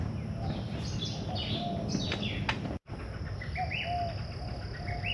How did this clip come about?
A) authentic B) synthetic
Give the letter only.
A